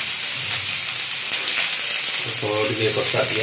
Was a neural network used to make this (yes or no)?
no